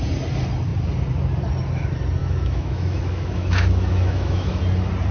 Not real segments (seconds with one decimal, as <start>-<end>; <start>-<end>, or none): 2.2-4.6

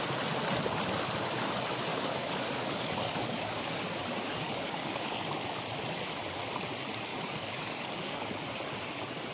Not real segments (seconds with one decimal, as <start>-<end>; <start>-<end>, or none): 1.9-5.2; 7.1-8.2

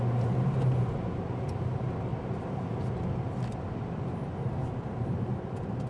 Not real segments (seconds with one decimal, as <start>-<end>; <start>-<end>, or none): 2.1-5.9

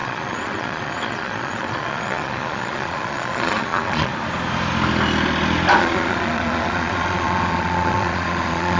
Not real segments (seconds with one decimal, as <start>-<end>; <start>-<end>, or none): 0.0-4.1; 5.8-8.8

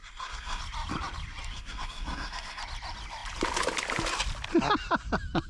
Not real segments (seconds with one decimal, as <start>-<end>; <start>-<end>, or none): 0.0-0.6; 1.5-2.6

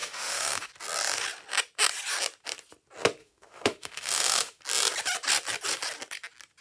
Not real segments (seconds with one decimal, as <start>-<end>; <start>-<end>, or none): 0.0-0.7; 3.2-4.6